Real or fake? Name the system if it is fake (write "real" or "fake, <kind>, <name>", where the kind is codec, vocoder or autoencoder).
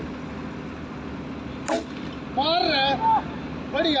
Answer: real